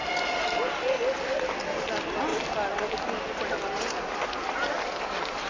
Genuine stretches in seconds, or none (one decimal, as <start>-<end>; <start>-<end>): 0.0-5.5